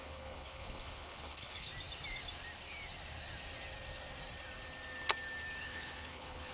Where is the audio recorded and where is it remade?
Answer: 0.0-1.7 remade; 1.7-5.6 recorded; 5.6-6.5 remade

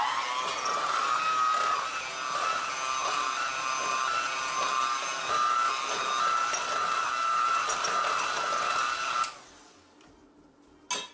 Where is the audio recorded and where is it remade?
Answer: 0.0-11.1 recorded

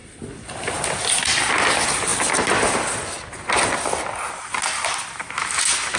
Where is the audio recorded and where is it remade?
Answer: 0.0-6.0 recorded